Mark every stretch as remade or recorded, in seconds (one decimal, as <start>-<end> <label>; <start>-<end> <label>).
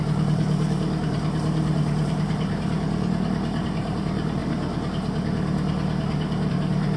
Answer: 0.0-4.4 remade; 4.4-6.5 recorded; 6.5-7.0 remade